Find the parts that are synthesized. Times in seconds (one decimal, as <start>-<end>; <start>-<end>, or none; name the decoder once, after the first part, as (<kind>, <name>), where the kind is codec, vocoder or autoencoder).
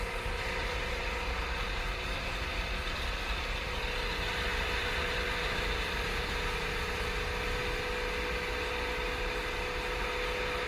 none